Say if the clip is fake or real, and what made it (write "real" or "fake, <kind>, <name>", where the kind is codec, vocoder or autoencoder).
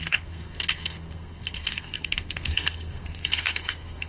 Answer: fake, codec, SNAC